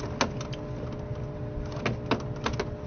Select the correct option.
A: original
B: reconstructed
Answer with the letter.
A